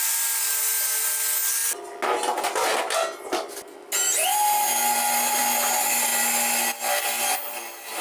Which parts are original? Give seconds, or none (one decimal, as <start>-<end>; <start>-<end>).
0.0-8.0